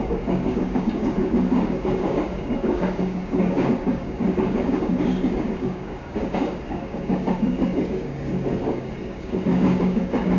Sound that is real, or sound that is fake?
fake